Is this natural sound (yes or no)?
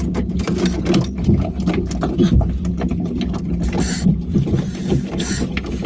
yes